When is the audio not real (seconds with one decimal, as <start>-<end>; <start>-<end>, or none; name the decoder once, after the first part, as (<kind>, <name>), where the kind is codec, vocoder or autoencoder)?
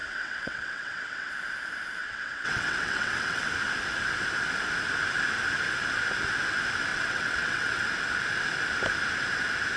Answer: 0.0-1.3 (vocoder, WaveNeXt); 2.0-3.5; 6.9-7.8